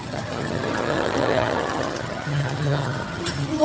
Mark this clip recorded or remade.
remade